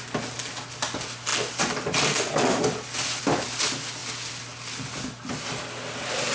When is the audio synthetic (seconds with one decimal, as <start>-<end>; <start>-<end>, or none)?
none